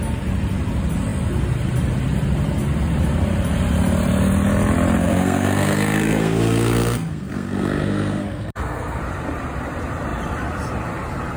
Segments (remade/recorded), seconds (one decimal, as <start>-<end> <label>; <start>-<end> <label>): 0.0-5.0 recorded; 5.0-9.0 remade; 9.0-11.4 recorded